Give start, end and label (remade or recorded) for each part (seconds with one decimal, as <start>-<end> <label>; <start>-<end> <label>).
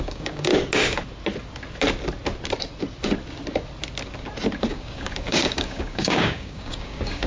0.0-0.5 remade; 0.5-4.7 recorded; 4.7-7.3 remade